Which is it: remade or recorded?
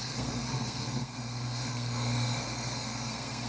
remade